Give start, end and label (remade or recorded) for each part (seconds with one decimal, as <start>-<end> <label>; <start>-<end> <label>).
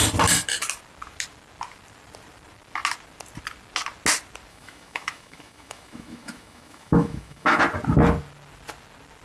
0.0-4.5 recorded; 4.5-7.6 remade; 7.6-9.2 recorded